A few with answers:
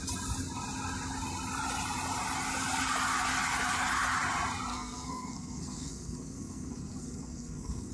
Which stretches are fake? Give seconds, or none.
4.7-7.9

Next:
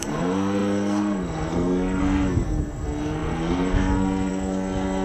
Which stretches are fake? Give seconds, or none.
0.0-5.0

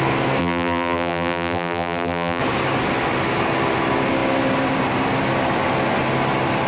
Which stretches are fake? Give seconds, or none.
0.4-2.4

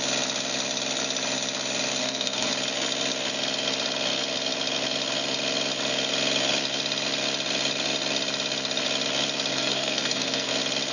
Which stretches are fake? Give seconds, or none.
2.0-2.5; 9.5-10.5